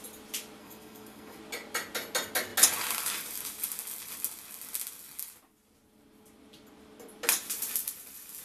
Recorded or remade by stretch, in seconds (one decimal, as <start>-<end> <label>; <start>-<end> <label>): 0.0-0.6 recorded; 0.6-1.4 remade; 1.4-8.4 recorded